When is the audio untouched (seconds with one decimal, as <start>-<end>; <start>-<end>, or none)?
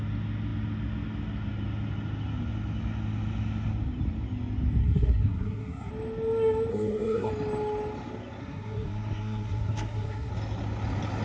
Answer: 0.0-4.8; 5.9-6.7; 7.3-8.4; 10.3-11.2